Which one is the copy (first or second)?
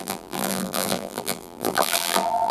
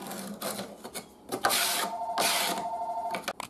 first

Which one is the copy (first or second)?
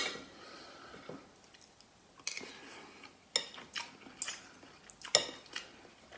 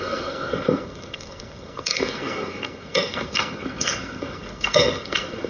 second